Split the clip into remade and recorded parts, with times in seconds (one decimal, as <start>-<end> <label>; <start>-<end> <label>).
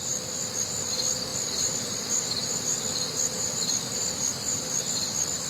0.0-5.5 recorded